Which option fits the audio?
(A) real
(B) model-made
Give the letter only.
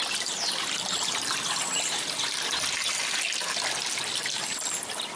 A